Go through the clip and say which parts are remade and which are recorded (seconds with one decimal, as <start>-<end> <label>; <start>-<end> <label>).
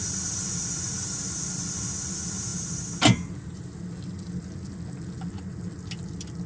0.0-6.5 recorded